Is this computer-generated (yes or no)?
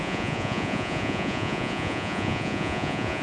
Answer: yes